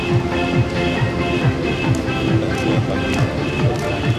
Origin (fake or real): real